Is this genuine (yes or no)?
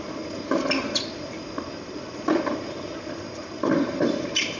yes